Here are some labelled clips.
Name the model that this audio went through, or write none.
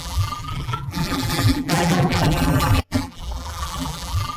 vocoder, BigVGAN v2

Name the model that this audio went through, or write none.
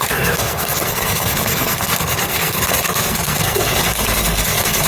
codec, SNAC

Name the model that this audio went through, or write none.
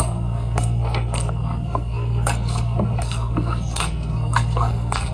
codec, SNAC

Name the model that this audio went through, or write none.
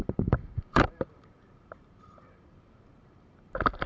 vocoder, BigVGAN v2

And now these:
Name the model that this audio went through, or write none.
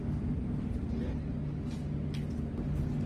none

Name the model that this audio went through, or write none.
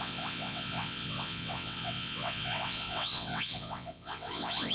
vocoder, WaveNeXt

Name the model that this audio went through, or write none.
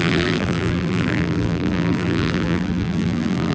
vocoder, BigVGAN v2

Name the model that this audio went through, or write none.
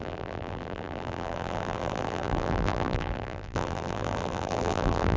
vocoder, BigVGAN v2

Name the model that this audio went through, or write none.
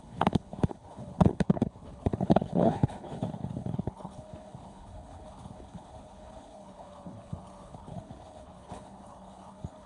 codec, HILCodec